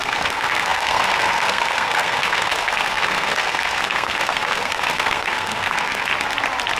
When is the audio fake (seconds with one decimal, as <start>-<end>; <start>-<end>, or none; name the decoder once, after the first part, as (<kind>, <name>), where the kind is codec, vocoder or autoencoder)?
0.0-6.1 (codec, SNAC)